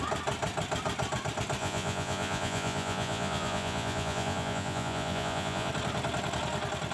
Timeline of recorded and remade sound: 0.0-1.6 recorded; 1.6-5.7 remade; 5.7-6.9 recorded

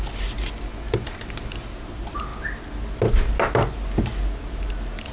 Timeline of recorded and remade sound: 0.0-5.1 recorded

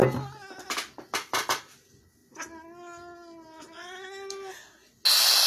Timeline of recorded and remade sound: 0.0-5.5 recorded

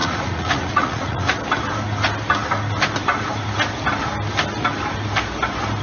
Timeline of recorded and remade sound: 0.0-1.4 remade; 1.4-5.8 recorded

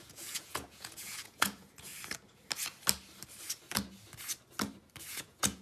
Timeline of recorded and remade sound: 0.0-1.9 remade; 1.9-5.1 recorded; 5.1-5.6 remade

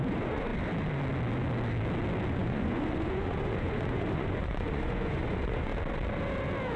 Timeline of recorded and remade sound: 0.0-0.5 remade; 0.5-2.3 recorded; 2.3-5.7 remade; 5.7-6.8 recorded

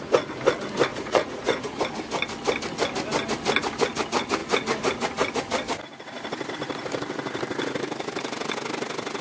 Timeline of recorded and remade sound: 0.0-0.9 recorded; 0.9-1.8 remade; 1.8-9.2 recorded

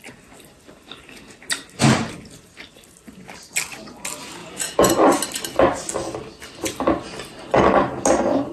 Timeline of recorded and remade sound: 0.0-4.4 recorded; 4.4-4.9 remade; 4.9-8.5 recorded